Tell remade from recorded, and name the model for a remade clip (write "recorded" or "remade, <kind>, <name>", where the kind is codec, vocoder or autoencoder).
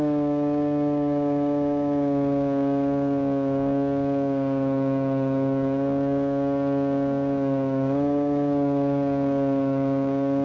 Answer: remade, codec, DAC